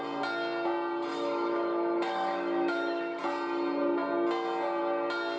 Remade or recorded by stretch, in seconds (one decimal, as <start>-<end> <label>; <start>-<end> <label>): 0.0-1.1 recorded; 1.1-3.2 remade; 3.2-5.4 recorded